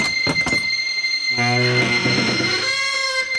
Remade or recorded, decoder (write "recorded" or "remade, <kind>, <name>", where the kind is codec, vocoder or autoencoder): recorded